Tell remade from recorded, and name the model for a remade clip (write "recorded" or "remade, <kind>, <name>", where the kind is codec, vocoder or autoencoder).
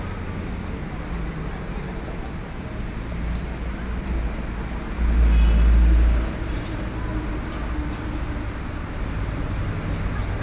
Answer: recorded